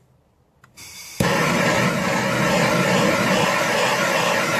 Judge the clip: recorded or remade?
recorded